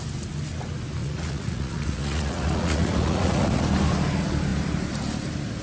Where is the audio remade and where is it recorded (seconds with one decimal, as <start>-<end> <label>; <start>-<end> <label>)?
0.0-1.0 recorded; 1.0-3.6 remade; 3.6-5.6 recorded